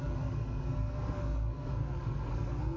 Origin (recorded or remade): remade